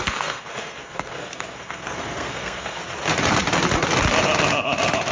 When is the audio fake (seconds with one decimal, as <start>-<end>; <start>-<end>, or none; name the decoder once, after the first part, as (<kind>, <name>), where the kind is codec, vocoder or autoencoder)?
0.0-2.8 (codec, SNAC)

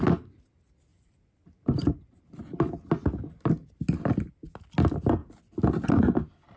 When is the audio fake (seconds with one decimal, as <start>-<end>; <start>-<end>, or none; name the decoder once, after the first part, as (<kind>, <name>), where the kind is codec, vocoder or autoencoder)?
none

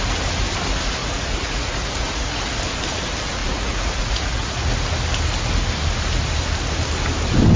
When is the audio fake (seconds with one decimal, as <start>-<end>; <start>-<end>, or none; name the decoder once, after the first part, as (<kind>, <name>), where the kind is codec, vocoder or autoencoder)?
1.0-2.4 (vocoder, Vocos); 3.4-4.7

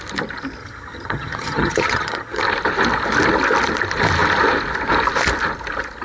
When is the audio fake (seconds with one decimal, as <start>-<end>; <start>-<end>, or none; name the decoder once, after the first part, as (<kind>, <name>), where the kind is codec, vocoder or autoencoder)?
0.6-2.4 (vocoder, HiFi-GAN)

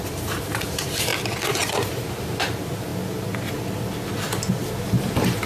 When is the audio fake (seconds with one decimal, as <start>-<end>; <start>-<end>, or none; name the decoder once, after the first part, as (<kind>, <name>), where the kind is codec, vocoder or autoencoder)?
0.0-1.1 (vocoder, BigVGAN v2); 1.8-2.9; 4.9-5.5

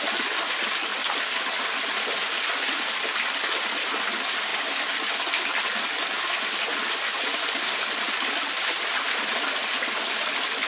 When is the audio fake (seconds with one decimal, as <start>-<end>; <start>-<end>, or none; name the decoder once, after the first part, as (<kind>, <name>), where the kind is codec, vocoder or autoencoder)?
0.9-1.9 (vocoder, BigVGAN v2); 4.5-5.0

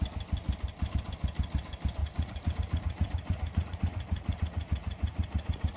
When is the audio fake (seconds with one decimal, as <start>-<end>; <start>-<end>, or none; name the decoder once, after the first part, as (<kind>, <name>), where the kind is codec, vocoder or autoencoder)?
2.0-5.8 (vocoder, Vocos)